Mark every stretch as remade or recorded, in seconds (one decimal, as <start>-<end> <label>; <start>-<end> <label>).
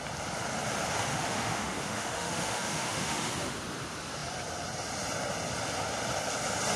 0.0-1.1 recorded; 1.1-3.3 remade; 3.3-6.8 recorded